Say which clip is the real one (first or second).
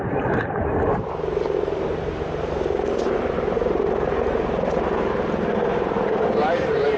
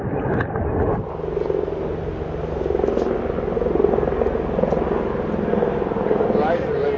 second